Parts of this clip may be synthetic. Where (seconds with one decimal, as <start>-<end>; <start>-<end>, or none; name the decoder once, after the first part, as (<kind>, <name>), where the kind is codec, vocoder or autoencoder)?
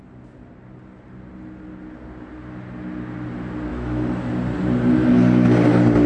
3.7-4.3 (autoencoder, DAC-VAE)